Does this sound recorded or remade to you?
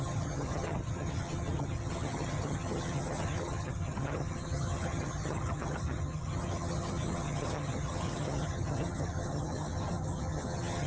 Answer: remade